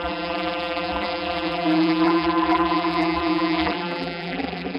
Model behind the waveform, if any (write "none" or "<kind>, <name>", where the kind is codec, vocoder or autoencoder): vocoder, BigVGAN v2